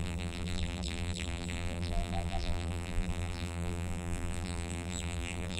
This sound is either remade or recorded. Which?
remade